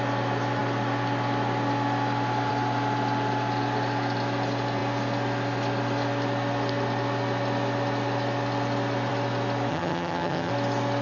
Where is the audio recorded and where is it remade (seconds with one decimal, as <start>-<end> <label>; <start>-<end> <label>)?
0.0-9.7 recorded; 9.7-10.5 remade; 10.5-11.0 recorded